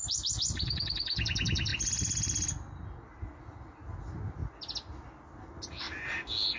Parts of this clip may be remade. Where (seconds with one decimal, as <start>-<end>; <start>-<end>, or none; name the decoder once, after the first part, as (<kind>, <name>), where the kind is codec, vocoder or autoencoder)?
none